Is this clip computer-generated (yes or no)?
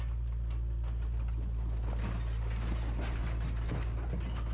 no